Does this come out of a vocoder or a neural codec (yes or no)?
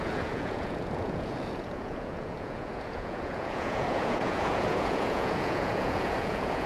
yes